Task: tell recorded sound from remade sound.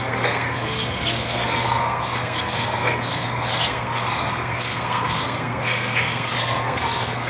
remade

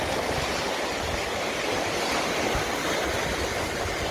recorded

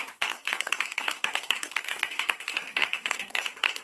remade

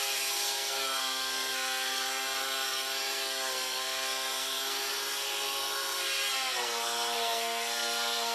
remade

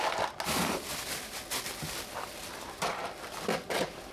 recorded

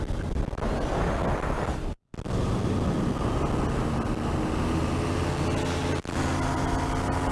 recorded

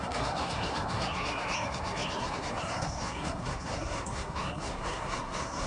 remade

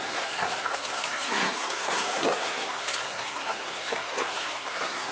remade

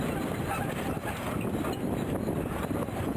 recorded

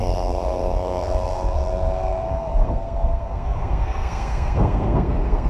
remade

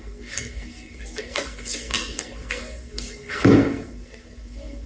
remade